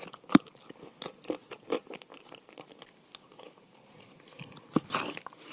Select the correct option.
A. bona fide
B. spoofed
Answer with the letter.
A